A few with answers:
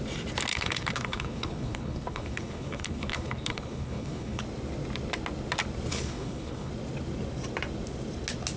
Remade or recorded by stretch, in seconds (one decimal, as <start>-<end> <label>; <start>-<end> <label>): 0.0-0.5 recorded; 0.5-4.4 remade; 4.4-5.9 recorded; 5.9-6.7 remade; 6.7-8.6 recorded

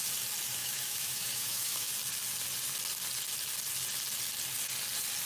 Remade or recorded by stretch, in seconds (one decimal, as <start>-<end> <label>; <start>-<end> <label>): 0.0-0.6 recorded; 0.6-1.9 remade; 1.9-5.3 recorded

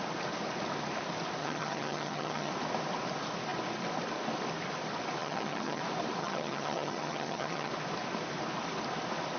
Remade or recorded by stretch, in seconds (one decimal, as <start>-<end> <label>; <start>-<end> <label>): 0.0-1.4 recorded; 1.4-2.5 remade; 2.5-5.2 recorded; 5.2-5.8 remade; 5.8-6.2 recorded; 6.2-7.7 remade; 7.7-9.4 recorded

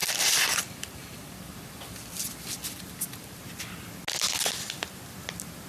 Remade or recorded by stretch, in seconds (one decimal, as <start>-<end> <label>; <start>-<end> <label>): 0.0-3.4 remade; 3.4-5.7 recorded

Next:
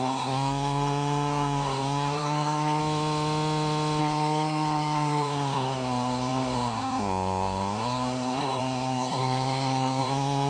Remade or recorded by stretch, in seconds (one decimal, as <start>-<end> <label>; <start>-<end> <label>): 0.0-2.8 remade; 2.8-4.0 recorded; 4.0-10.5 remade